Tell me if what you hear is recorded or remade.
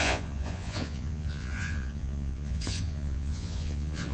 remade